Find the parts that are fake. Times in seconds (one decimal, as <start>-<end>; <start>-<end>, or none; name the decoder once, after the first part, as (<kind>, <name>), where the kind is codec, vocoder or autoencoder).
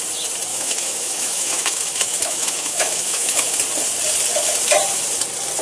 0.5-3.6 (autoencoder, DAC-VAE)